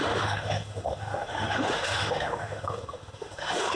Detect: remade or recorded remade